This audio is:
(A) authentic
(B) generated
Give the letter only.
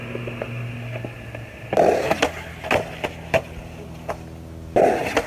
A